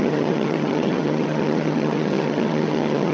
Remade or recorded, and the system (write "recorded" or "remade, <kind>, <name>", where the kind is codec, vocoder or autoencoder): remade, vocoder, HiFi-GAN